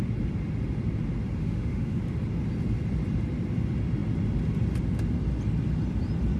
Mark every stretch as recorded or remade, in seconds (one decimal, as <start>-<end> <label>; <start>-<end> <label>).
0.0-1.4 recorded; 1.4-2.0 remade; 2.0-6.4 recorded